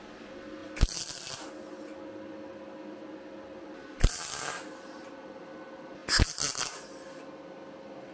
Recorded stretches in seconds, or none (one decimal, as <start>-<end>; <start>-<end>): 0.0-8.1